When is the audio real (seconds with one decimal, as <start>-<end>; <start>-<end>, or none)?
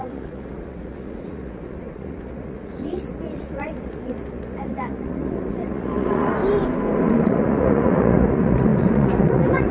6.4-7.0